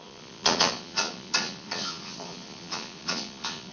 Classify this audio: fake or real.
fake